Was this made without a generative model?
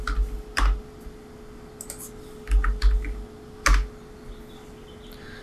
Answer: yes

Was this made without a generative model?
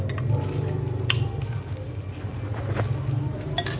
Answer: yes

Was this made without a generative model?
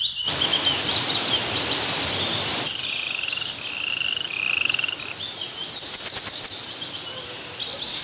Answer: yes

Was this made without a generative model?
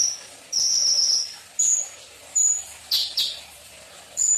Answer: yes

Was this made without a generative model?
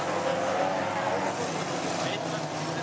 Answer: yes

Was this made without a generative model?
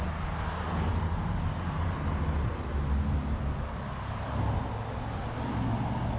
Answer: yes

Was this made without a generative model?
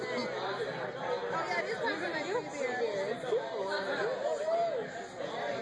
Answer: yes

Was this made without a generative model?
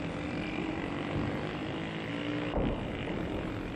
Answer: yes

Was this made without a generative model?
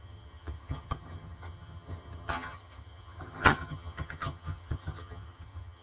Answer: no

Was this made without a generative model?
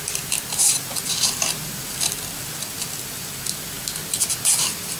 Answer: yes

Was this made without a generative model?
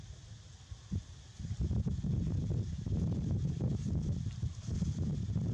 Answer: no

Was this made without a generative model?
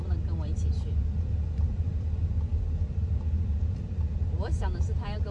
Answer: yes